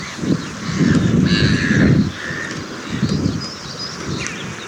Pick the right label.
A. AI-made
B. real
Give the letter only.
B